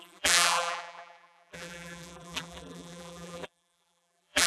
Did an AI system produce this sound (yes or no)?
yes